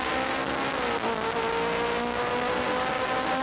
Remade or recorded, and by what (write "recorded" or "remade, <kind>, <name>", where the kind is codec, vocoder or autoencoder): recorded